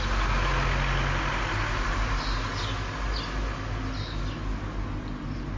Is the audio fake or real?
real